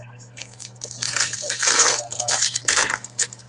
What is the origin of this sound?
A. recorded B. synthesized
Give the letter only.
B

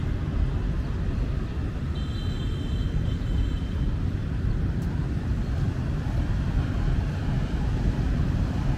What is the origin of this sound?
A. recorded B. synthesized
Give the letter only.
A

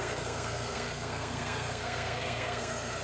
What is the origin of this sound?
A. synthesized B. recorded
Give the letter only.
A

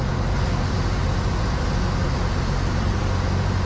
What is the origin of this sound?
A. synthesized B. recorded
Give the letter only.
B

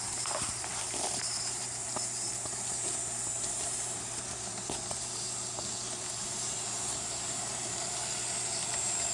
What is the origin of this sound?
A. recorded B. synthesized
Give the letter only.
B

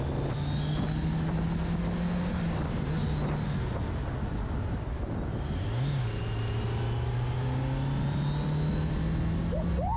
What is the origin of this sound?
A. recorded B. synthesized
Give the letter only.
A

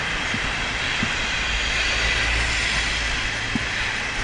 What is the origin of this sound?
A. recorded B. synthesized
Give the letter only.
A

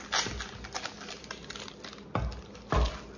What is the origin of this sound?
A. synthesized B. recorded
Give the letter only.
B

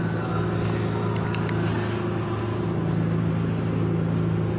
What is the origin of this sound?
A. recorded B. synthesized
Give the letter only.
A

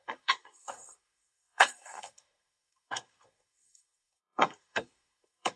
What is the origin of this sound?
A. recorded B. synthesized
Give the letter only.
B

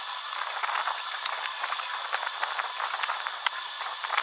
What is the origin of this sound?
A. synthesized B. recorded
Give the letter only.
B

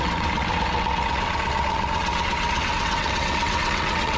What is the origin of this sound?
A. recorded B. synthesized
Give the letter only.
B